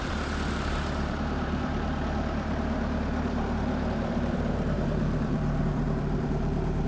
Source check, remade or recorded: remade